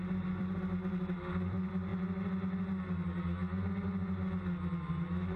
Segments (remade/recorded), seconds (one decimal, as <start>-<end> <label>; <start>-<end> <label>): 0.0-1.9 remade; 1.9-5.4 recorded